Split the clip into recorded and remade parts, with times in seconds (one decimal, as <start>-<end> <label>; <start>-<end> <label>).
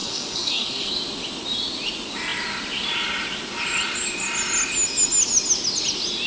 0.0-0.9 remade; 0.9-6.3 recorded